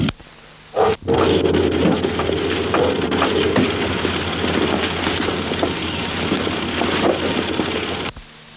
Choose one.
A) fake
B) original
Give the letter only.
B